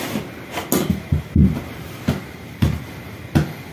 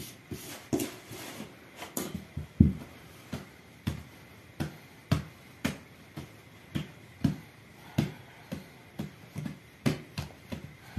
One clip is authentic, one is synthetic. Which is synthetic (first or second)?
second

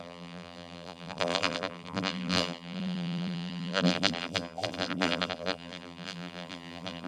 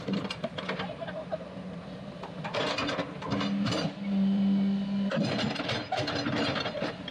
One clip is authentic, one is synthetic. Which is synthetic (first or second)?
first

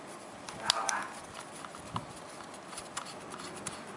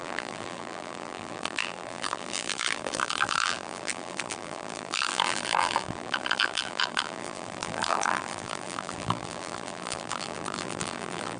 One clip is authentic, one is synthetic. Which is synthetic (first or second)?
second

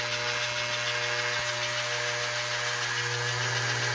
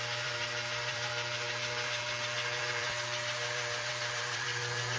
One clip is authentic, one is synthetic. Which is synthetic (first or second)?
second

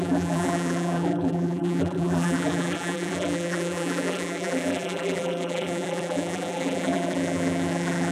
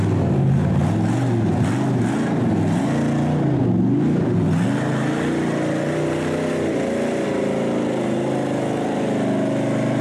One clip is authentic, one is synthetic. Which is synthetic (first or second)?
first